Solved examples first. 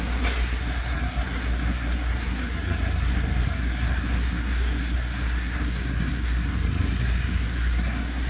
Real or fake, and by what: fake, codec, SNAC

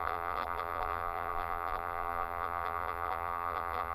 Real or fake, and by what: fake, vocoder, BigVGAN v2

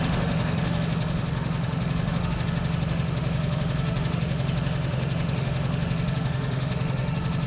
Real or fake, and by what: fake, autoencoder, DAC-VAE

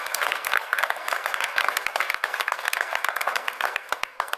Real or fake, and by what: fake, codec, SNAC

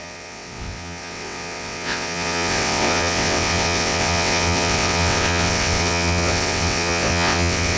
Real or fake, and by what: fake, vocoder, WaveNeXt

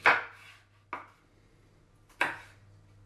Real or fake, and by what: real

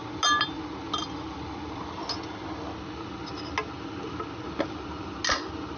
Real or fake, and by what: real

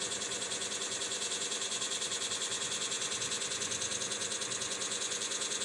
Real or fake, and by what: fake, vocoder, Vocos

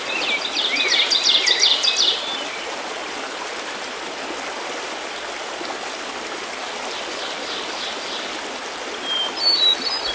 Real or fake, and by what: fake, vocoder, BigVGAN v2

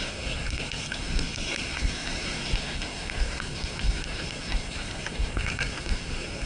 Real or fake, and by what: fake, codec, SNAC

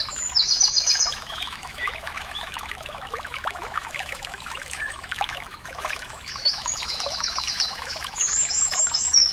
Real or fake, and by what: fake, autoencoder, DAC-VAE